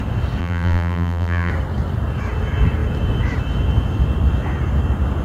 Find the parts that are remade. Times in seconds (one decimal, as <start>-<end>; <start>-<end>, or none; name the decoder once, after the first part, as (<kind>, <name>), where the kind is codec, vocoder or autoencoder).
0.4-1.5 (vocoder, BigVGAN v2)